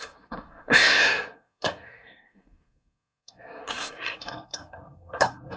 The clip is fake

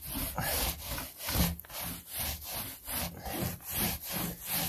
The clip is real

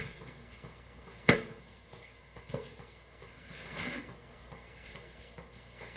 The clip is fake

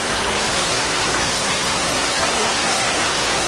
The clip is fake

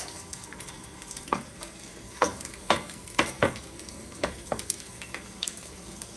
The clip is fake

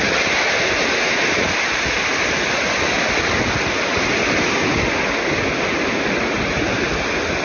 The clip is real